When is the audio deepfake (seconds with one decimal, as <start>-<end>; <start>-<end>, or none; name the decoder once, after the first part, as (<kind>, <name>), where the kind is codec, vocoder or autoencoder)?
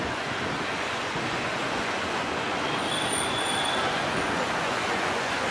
0.0-5.5 (vocoder, Vocos)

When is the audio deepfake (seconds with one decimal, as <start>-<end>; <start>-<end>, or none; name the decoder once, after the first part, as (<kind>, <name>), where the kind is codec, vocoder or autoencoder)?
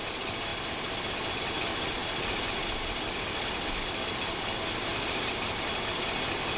none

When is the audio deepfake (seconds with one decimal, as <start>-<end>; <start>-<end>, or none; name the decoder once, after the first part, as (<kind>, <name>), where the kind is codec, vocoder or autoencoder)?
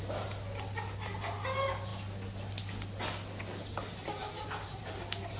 none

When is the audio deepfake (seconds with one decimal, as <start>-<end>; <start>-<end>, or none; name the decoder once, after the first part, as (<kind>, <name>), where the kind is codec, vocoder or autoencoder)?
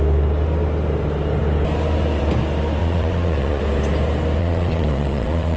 2.8-3.6 (vocoder, Vocos); 4.4-5.6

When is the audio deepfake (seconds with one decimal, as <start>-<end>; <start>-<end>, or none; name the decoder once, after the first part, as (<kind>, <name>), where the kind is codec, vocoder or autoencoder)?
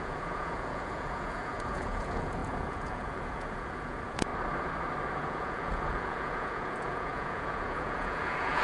0.0-4.3 (vocoder, Vocos); 5.1-8.6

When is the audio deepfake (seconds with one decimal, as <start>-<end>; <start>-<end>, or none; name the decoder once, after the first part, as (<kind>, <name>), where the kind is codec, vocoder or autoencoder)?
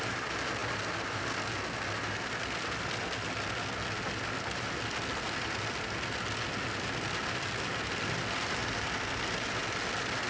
none